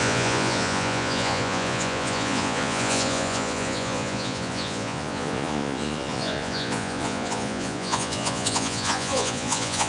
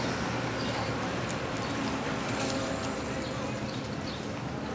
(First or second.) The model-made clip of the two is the first